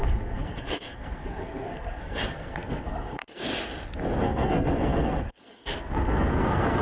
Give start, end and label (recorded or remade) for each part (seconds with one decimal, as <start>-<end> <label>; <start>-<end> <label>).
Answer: 0.0-3.5 remade; 3.5-4.2 recorded; 4.2-6.8 remade